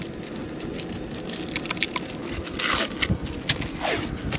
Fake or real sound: real